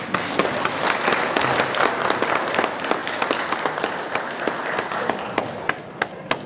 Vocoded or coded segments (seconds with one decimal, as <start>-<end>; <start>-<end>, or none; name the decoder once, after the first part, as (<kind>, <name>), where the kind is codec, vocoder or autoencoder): none